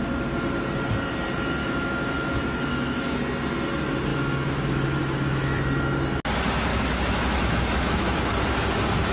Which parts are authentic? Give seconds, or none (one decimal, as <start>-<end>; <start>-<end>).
0.0-1.6; 2.3-2.7; 3.2-4.1; 5.6-6.7; 8.2-9.1